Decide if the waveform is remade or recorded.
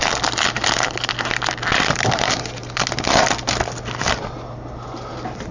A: recorded